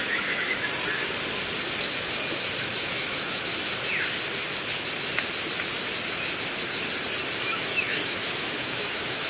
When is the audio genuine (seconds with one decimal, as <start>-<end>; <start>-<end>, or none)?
0.7-2.6; 3.5-7.4